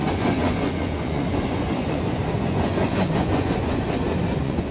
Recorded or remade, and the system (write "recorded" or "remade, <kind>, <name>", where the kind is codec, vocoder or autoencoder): remade, vocoder, Vocos